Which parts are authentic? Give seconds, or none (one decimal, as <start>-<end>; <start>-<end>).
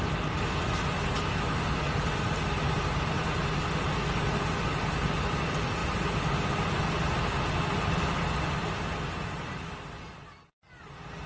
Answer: 0.0-11.3